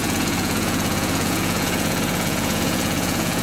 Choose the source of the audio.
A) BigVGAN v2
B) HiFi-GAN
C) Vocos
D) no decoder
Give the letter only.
C